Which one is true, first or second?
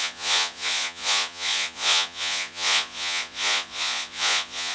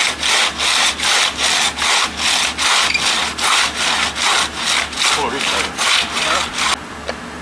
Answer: second